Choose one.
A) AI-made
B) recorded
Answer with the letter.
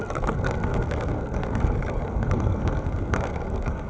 A